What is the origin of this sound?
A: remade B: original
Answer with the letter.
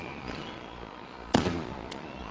A